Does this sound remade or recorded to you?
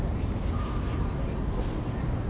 recorded